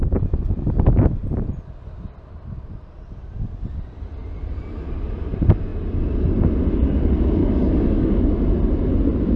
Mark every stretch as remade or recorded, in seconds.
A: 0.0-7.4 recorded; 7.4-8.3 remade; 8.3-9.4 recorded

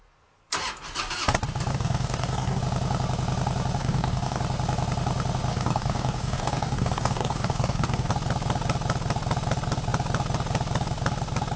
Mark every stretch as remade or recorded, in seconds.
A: 0.0-1.7 recorded; 1.7-2.6 remade; 2.6-3.8 recorded; 3.8-4.4 remade; 4.4-5.5 recorded; 5.5-8.1 remade; 8.1-11.6 recorded

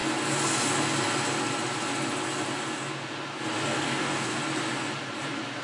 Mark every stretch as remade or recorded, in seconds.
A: 0.0-3.7 recorded; 3.7-4.4 remade; 4.4-5.6 recorded

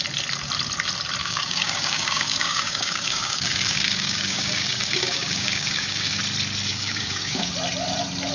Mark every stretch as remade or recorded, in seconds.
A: 0.0-1.2 recorded; 1.2-6.2 remade; 6.2-6.7 recorded; 6.7-7.5 remade; 7.5-8.3 recorded

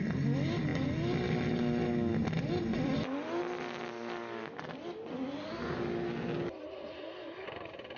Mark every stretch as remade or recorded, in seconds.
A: 0.0-8.0 recorded

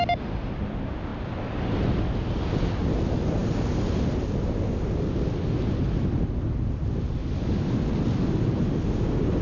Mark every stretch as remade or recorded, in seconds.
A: 0.0-7.2 recorded; 7.2-7.7 remade; 7.7-9.4 recorded